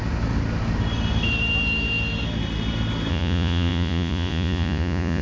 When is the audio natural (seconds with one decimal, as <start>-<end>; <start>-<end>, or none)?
0.0-3.1